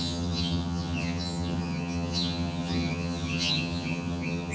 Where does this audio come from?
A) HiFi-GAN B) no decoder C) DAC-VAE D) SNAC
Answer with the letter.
A